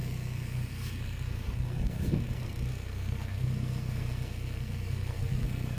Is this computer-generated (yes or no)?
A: yes